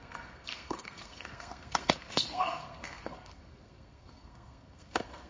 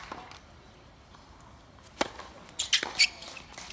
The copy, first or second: first